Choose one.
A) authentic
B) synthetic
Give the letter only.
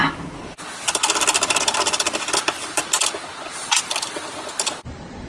A